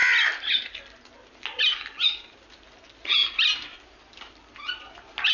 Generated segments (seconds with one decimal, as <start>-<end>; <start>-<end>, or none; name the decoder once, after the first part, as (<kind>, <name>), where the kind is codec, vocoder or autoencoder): none